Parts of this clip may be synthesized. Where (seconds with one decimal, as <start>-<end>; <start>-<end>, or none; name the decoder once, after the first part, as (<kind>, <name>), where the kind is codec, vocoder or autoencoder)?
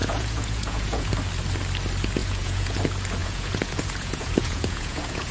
0.0-1.1 (vocoder, Vocos); 2.2-2.8; 3.2-5.3